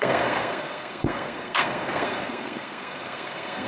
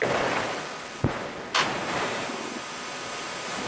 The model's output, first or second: first